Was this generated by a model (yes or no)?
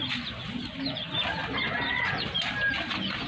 no